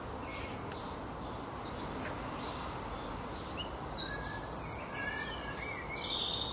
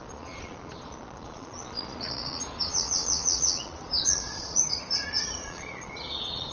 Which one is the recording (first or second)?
first